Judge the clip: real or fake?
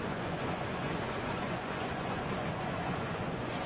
fake